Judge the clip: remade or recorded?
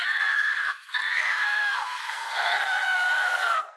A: remade